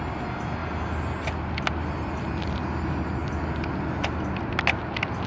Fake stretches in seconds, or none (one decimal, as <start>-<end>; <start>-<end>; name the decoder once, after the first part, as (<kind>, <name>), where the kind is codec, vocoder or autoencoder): none